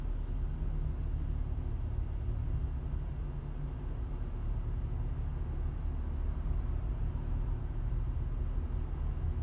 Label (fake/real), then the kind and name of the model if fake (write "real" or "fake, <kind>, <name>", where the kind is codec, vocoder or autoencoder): real